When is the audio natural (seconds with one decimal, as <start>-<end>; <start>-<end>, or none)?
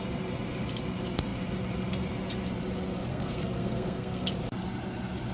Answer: 0.0-3.1; 4.3-5.3